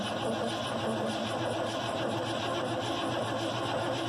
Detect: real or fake real